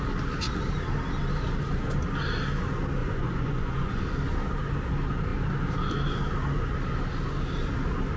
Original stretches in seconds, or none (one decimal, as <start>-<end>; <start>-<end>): 0.0-3.0; 4.0-8.2